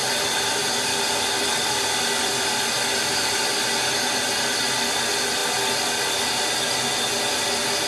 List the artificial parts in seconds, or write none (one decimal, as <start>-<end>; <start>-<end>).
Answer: none